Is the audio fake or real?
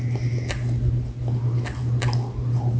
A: real